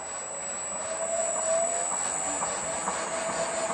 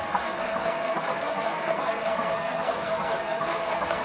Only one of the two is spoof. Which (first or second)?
second